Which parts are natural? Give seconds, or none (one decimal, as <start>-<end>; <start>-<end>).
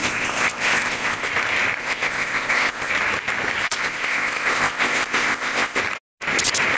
1.3-1.8; 2.9-3.6; 5.8-6.8